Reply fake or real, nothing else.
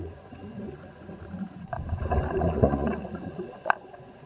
fake